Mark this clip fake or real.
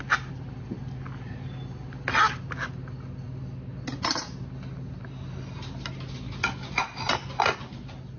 real